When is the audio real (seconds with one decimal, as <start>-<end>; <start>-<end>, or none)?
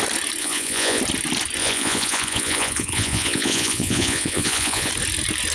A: 0.0-0.4; 1.0-1.6; 4.9-5.5